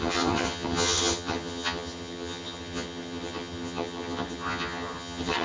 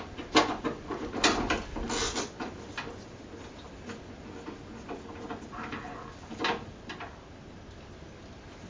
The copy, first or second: first